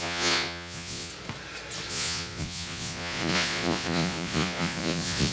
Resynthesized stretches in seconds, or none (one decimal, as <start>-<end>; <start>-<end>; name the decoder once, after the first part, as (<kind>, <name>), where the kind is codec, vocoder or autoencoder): 0.0-1.1 (vocoder, Vocos); 1.9-5.3